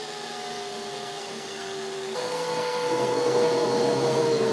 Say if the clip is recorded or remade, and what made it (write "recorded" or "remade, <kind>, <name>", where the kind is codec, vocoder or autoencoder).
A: remade, codec, SNAC